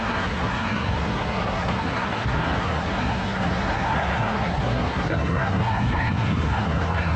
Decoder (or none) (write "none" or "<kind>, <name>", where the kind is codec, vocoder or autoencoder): codec, SNAC